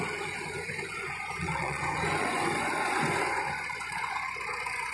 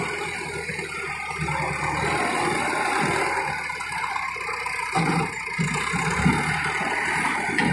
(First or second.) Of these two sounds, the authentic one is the second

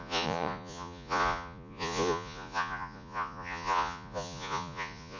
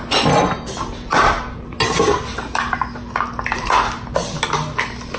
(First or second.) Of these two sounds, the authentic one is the second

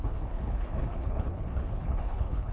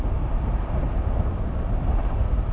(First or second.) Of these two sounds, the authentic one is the second